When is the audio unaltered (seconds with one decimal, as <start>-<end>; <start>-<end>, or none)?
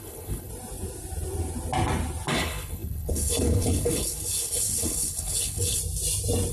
0.5-2.3; 5.8-6.5